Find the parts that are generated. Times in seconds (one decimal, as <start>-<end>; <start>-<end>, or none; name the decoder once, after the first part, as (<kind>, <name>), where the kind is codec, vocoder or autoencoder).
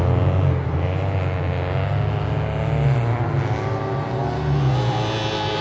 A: none